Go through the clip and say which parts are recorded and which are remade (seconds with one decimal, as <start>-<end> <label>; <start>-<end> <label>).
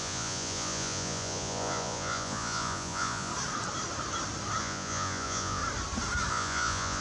0.0-3.3 remade; 3.3-4.6 recorded; 4.6-5.6 remade; 5.6-6.3 recorded; 6.3-7.0 remade